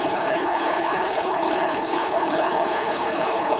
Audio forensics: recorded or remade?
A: remade